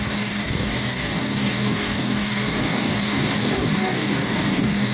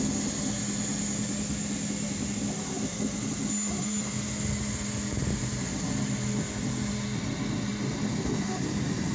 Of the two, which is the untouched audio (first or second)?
second